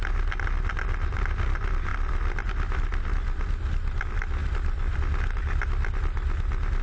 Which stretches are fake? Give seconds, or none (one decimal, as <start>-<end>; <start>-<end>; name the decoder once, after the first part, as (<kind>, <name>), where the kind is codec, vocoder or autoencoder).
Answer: 1.9-2.5 (vocoder, BigVGAN v2); 4.4-5.4